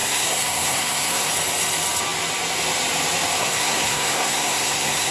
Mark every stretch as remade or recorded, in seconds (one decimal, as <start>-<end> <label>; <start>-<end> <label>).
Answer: 0.0-1.3 remade; 1.3-3.4 recorded; 3.4-5.1 remade